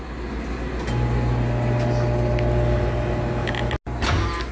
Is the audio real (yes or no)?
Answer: yes